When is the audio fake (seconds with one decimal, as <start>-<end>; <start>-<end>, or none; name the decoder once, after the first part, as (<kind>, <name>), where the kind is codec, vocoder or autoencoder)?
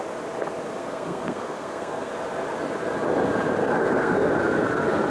0.8-2.1 (codec, SNAC); 3.6-4.3